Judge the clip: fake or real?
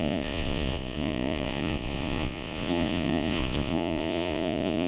fake